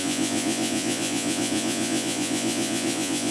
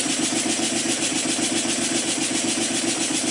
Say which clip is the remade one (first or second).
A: first